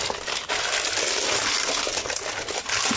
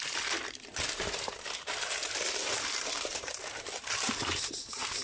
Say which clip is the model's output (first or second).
second